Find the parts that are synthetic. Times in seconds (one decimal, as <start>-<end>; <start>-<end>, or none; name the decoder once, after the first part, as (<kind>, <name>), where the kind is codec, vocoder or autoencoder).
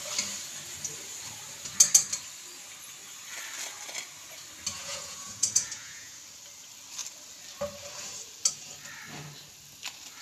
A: 4.7-6.2 (vocoder, Vocos)